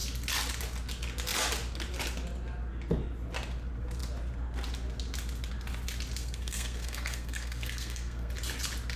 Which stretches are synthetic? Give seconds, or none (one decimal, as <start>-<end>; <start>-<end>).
6.2-8.3

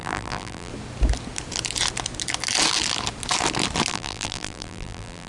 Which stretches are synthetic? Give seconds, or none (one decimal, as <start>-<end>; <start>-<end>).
0.0-0.7; 3.9-5.3

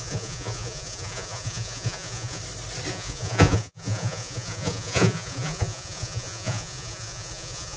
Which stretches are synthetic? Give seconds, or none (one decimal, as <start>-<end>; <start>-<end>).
0.0-2.4; 2.9-7.8

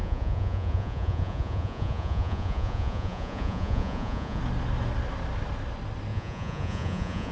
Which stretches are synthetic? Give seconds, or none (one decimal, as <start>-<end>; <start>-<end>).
0.0-4.4; 6.1-7.3

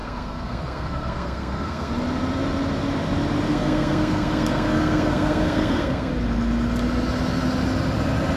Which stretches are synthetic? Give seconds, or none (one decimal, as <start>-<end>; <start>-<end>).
0.0-1.9; 3.5-6.1

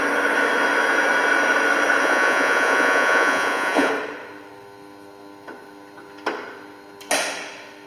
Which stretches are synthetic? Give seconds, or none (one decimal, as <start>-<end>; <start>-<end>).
2.0-3.9